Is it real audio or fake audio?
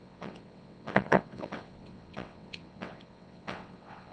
fake